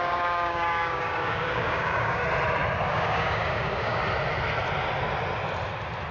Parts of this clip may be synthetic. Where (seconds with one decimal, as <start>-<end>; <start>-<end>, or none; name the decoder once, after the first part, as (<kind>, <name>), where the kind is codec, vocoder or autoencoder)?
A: 0.0-2.2 (codec, DAC); 2.8-4.0